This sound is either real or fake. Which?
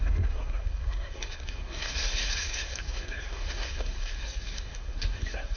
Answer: fake